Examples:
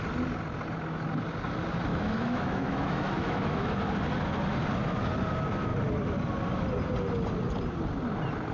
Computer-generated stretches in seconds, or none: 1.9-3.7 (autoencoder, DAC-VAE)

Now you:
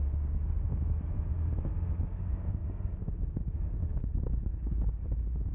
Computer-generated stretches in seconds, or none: 0.0-0.7 (codec, DAC); 2.0-2.6; 3.4-3.8; 4.5-5.5